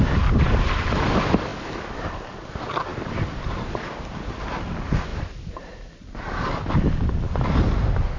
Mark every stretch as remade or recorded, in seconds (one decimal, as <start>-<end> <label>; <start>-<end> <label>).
0.0-8.2 recorded